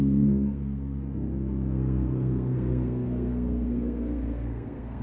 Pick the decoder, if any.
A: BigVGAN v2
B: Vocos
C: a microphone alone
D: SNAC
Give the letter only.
D